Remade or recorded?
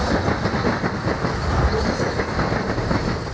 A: recorded